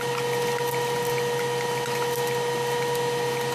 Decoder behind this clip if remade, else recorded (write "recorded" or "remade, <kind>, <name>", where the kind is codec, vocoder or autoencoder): recorded